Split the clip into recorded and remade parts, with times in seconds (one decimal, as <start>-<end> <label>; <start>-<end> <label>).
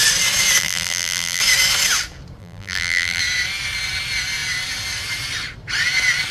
0.0-0.6 recorded; 0.6-1.4 remade; 1.4-2.4 recorded; 2.4-3.2 remade; 3.2-6.3 recorded